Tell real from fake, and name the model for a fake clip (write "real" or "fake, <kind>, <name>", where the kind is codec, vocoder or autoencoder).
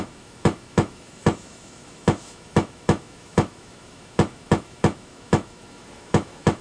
fake, autoencoder, DAC-VAE